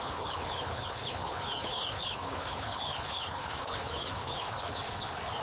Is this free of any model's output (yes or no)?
no